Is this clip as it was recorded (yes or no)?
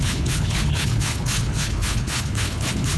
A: no